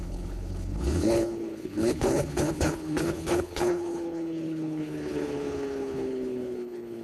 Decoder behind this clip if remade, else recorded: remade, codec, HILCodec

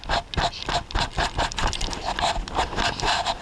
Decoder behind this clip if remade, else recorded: recorded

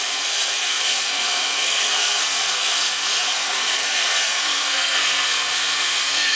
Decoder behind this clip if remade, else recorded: remade, codec, SNAC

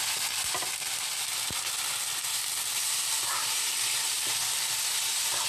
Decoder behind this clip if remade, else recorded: recorded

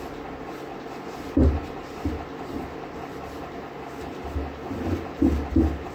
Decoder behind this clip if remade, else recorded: recorded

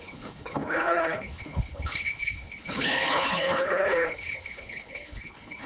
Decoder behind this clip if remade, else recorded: remade, codec, HILCodec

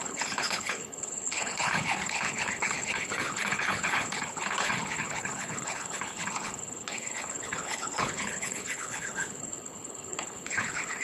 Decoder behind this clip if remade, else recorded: remade, codec, HILCodec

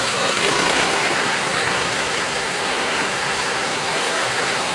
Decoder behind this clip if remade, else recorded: remade, codec, SNAC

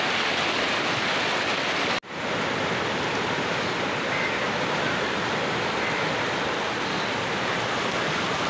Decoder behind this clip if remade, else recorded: recorded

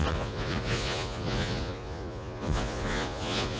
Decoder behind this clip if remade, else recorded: remade, vocoder, Vocos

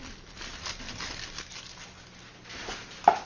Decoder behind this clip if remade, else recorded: recorded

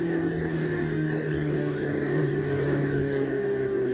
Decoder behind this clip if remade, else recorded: remade, codec, DAC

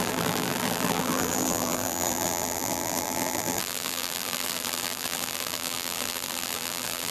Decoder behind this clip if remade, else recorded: remade, vocoder, BigVGAN v2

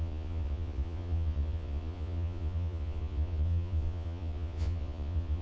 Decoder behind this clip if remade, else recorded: remade, vocoder, Vocos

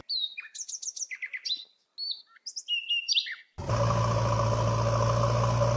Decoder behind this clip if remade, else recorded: recorded